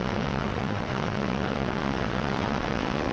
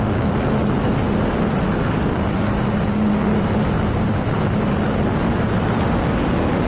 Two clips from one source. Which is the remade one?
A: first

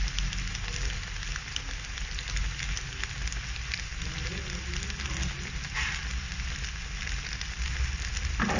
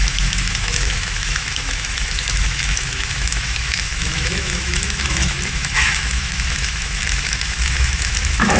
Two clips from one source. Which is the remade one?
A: second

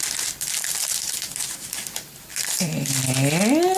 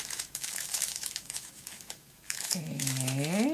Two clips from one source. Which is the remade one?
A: second